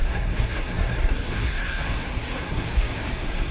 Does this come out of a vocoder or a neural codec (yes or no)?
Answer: yes